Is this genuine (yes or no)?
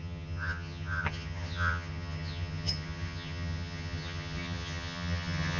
no